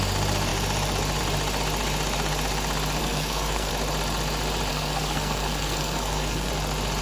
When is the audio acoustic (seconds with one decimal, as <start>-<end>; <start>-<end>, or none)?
0.0-3.0; 3.7-4.7; 6.5-7.0